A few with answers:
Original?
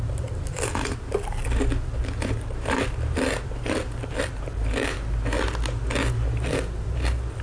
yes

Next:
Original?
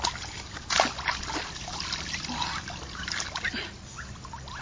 yes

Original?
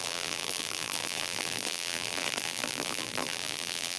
no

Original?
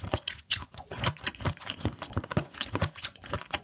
no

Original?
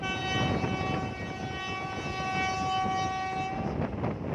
yes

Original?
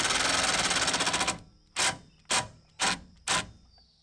yes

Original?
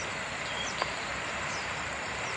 no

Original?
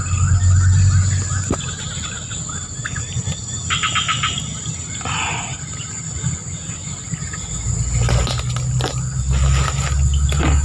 yes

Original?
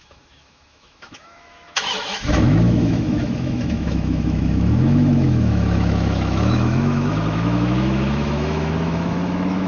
no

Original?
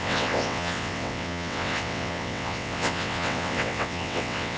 no